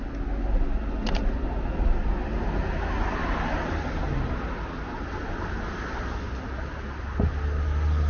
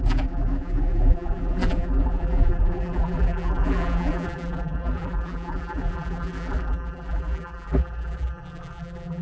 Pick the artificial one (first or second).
second